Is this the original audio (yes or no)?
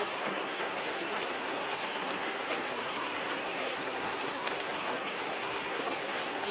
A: no